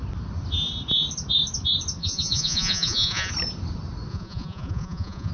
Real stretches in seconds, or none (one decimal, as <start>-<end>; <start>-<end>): 0.0-2.0; 3.3-4.1